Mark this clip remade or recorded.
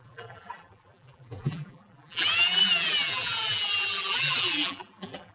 remade